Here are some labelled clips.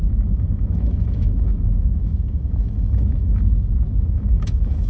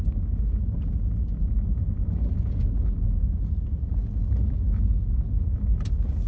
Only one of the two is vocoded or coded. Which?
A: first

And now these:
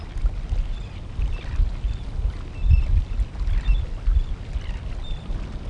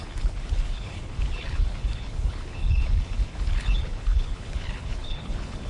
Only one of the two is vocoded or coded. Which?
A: second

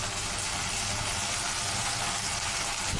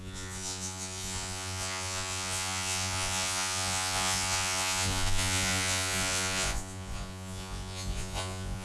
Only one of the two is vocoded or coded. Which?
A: second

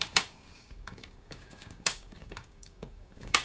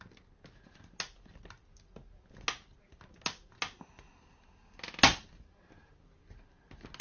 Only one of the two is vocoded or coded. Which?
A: first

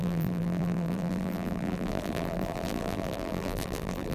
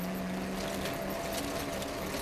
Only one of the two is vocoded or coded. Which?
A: first